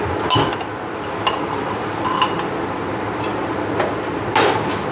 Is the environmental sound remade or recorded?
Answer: recorded